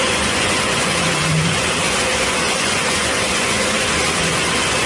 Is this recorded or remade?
remade